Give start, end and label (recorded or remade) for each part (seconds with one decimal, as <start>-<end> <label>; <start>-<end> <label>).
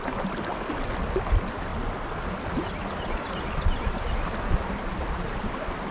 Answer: 0.0-1.7 recorded; 1.7-4.5 remade; 4.5-5.9 recorded